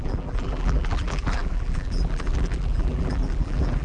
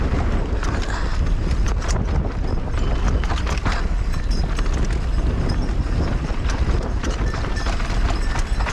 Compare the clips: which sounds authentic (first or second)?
second